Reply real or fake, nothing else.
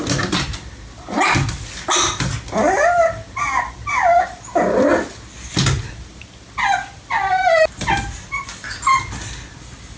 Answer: real